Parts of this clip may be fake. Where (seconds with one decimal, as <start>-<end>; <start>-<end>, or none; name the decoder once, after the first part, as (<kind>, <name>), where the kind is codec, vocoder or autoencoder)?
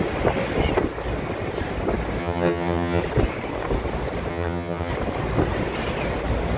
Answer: 2.2-3.0 (vocoder, HiFi-GAN); 4.3-4.9